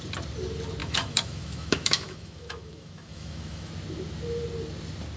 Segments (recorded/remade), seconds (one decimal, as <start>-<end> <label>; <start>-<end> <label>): 0.0-0.8 recorded; 0.8-3.7 remade; 3.7-5.2 recorded